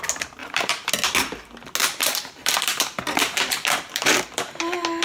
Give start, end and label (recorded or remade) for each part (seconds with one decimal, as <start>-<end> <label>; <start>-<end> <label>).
0.0-0.4 recorded; 0.4-0.9 remade; 0.9-1.8 recorded; 1.8-4.6 remade; 4.6-5.0 recorded